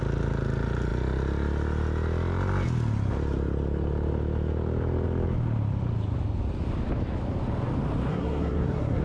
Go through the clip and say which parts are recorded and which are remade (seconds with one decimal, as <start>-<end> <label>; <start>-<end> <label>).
0.0-8.1 recorded; 8.1-9.0 remade